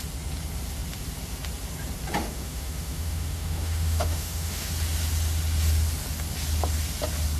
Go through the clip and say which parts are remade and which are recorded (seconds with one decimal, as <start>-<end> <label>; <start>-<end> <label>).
0.0-2.2 recorded; 2.2-4.7 remade; 4.7-7.4 recorded